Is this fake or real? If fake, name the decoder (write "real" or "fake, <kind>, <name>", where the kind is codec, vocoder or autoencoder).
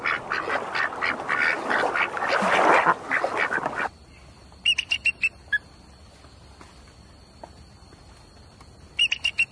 real